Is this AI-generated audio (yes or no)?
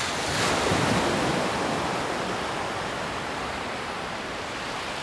no